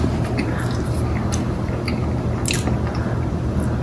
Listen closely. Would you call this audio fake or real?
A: real